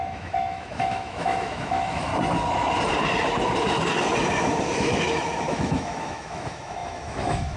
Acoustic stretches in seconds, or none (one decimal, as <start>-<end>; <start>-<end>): 2.1-4.6